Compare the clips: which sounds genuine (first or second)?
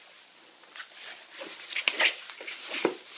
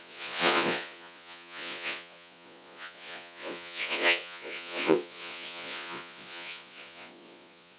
first